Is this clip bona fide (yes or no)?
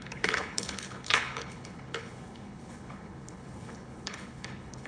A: no